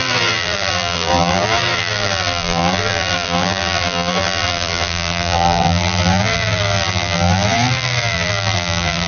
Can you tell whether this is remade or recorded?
remade